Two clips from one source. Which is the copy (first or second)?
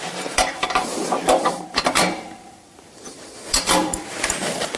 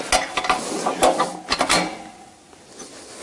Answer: first